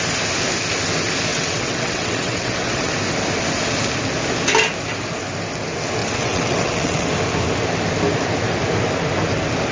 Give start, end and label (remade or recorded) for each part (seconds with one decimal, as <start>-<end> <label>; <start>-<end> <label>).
0.0-1.3 recorded; 1.3-2.9 remade; 2.9-6.0 recorded; 6.0-7.1 remade; 7.1-9.7 recorded